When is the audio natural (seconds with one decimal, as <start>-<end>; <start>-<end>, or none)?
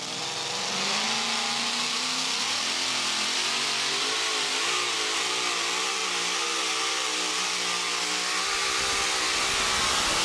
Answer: 0.0-10.2